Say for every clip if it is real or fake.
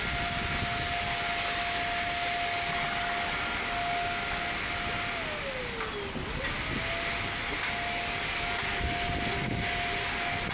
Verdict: real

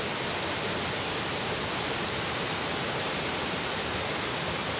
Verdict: real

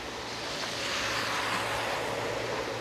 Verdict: real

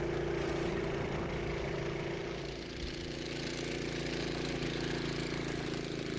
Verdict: real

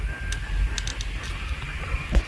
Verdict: real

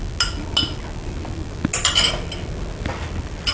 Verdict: real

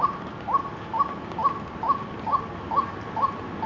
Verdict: real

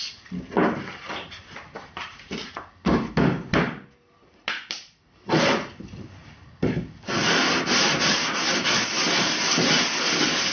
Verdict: real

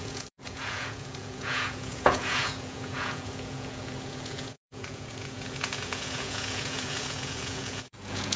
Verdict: fake